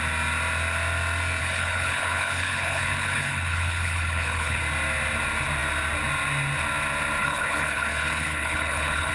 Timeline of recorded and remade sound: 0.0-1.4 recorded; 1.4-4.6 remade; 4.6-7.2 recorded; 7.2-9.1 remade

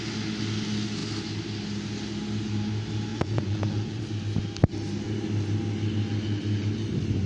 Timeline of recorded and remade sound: 0.0-3.1 recorded; 3.1-4.0 remade; 4.0-7.3 recorded

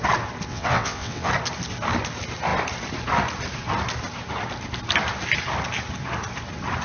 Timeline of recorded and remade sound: 0.0-0.5 recorded; 0.5-1.3 remade; 1.3-6.8 recorded

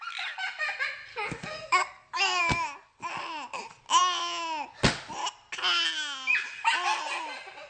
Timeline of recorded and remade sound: 0.0-1.1 recorded; 1.1-2.4 remade; 2.4-7.7 recorded

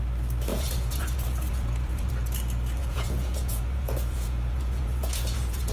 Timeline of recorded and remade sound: 0.0-0.5 recorded; 0.5-2.1 remade; 2.1-2.8 recorded; 2.8-5.7 remade

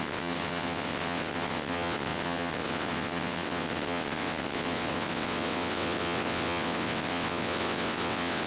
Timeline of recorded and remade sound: 0.0-8.5 remade

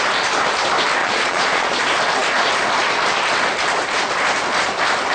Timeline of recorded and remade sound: 0.0-1.0 recorded; 1.0-1.8 remade; 1.8-5.1 recorded